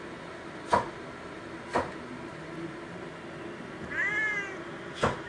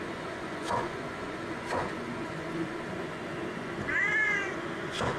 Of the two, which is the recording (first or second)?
first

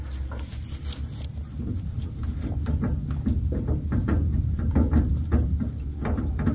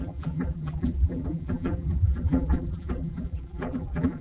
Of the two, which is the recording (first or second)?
first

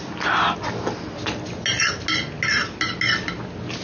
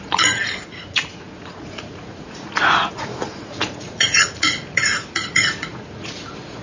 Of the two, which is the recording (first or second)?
first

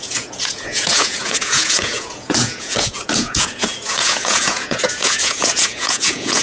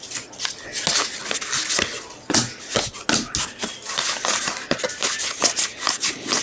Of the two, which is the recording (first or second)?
second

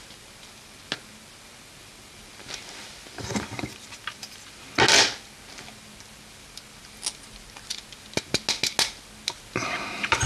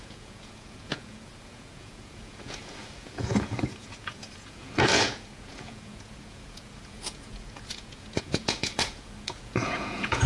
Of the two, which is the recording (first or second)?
first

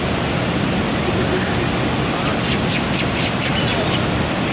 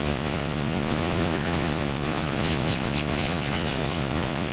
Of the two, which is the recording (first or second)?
first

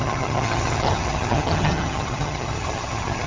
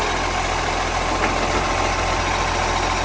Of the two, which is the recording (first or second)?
second